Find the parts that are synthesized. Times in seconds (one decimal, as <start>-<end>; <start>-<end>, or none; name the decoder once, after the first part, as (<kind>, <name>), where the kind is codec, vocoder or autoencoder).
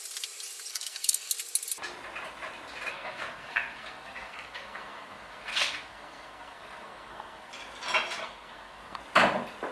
0.7-1.3 (codec, SNAC); 2.9-7.5; 8.2-9.0